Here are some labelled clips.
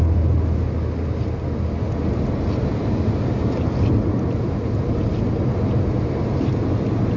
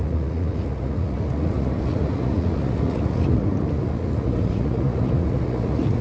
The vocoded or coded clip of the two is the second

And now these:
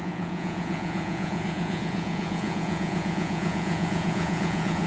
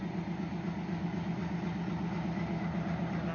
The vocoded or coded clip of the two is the first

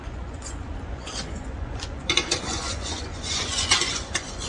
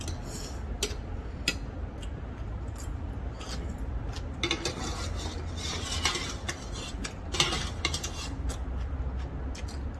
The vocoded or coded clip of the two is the first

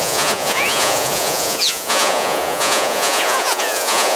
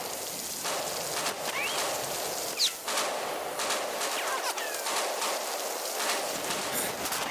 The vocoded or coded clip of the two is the first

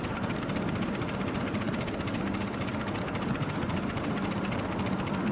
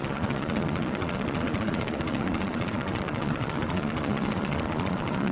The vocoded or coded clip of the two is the second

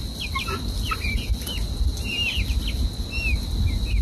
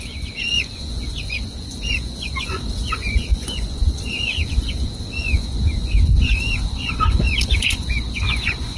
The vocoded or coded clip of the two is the second